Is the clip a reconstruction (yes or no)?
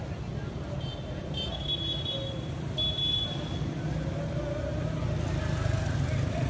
no